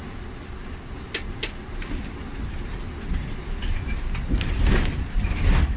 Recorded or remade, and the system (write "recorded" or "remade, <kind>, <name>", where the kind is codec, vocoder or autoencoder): recorded